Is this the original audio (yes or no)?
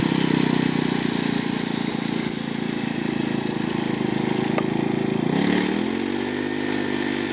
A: yes